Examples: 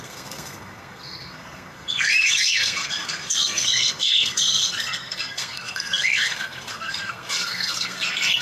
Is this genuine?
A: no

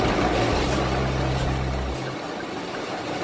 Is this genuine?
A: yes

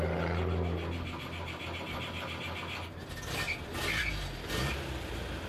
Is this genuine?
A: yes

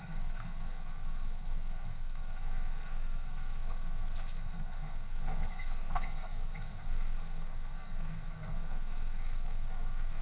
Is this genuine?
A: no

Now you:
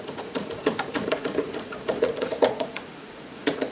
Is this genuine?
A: no